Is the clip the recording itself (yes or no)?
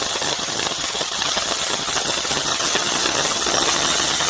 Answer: no